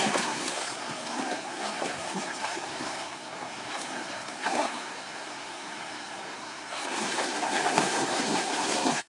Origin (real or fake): fake